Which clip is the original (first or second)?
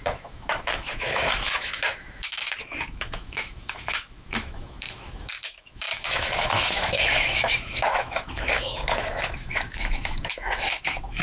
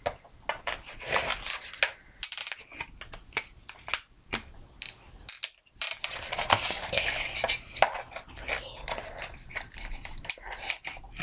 second